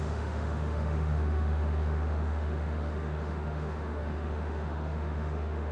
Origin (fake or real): fake